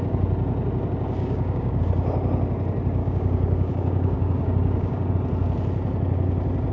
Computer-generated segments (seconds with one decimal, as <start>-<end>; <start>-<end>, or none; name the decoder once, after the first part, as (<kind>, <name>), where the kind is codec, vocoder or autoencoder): 1.2-1.8 (codec, DAC); 3.0-5.1